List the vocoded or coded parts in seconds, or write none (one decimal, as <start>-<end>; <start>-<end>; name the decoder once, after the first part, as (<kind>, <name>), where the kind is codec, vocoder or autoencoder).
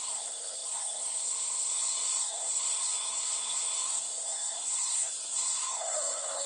0.0-6.5 (codec, SNAC)